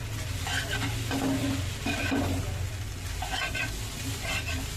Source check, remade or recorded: recorded